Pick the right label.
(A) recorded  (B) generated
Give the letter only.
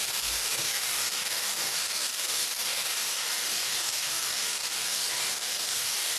B